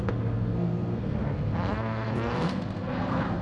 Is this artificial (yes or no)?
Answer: yes